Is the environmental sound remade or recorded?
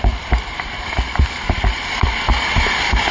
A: recorded